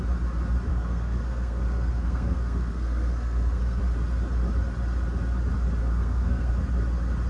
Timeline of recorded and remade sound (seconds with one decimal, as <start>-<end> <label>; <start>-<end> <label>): 0.0-0.7 recorded; 0.7-3.8 remade; 3.8-5.8 recorded; 5.8-6.5 remade; 6.5-7.3 recorded